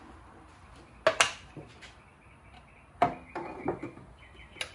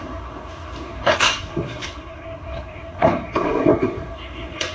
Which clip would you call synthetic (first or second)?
second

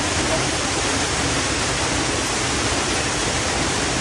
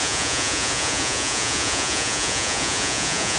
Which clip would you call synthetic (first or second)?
second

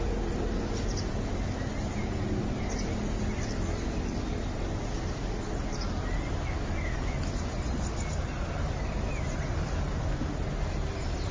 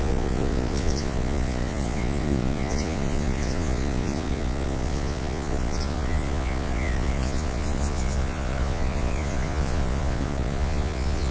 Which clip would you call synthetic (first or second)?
second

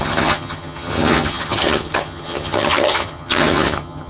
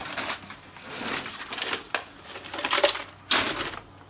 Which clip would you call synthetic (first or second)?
first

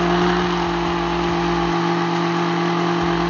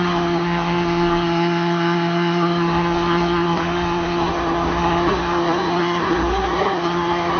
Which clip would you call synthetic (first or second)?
second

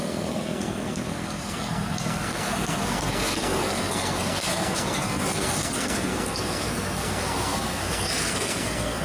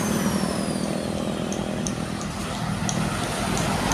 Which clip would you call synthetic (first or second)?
first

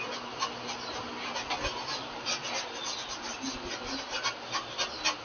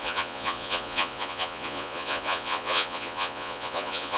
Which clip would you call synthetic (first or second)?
second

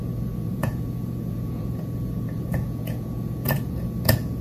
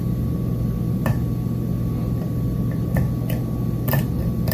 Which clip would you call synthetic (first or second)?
first